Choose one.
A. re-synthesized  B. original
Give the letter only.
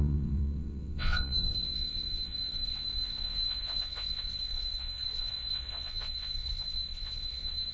A